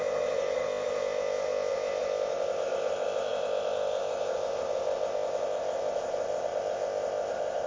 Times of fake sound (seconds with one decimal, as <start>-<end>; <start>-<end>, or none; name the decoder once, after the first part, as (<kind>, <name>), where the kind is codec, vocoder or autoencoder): 0.0-7.7 (codec, ZipCodec)